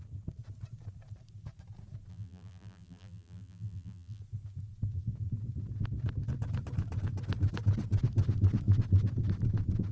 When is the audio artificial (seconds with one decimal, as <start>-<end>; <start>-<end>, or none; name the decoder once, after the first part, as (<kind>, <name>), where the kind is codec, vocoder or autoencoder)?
2.1-4.2 (vocoder, BigVGAN v2)